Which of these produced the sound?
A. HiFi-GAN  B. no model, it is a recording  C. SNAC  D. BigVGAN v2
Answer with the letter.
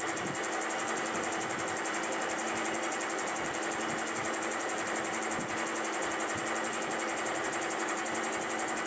B